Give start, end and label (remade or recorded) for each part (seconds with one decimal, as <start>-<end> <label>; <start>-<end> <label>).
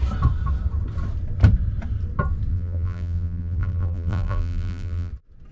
0.0-2.5 recorded; 2.5-5.1 remade; 5.1-5.5 recorded